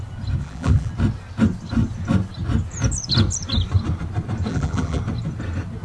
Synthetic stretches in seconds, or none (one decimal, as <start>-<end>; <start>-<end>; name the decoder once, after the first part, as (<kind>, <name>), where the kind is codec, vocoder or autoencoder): 0.4-0.9 (vocoder, BigVGAN v2); 4.5-5.0